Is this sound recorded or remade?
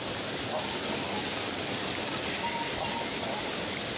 recorded